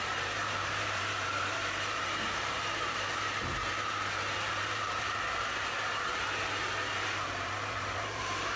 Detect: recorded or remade remade